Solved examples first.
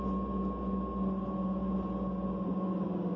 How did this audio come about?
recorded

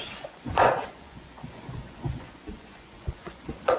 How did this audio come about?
remade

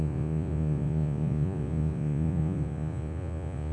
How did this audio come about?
remade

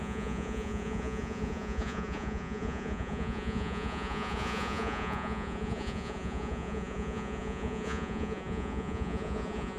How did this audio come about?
remade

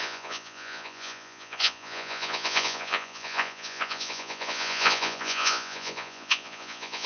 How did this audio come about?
remade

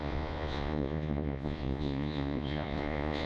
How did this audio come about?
remade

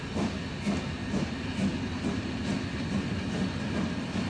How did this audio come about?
recorded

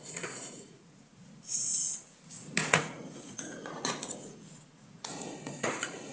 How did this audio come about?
remade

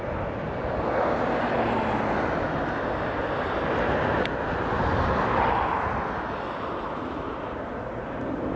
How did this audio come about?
recorded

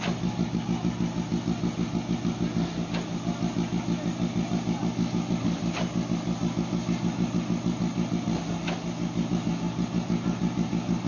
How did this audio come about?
recorded